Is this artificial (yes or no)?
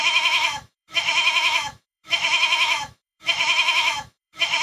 yes